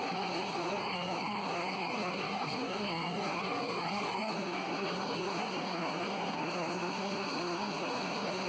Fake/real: fake